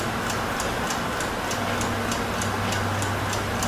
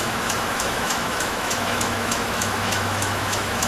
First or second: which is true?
first